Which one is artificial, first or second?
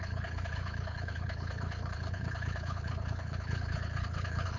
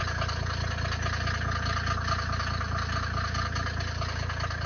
first